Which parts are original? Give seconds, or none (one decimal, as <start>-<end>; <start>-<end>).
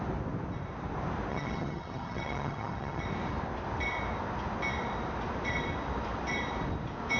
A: 0.0-1.3; 3.0-7.2